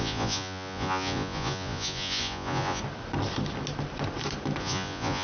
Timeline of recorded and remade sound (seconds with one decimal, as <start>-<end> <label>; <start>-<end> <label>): 0.0-2.8 remade; 2.8-4.6 recorded; 4.6-5.2 remade